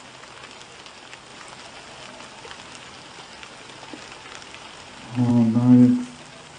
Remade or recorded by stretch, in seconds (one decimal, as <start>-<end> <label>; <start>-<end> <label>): 0.0-6.6 recorded